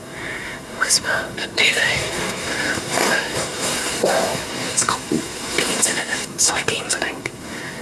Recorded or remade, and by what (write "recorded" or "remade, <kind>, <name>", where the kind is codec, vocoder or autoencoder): remade, codec, SNAC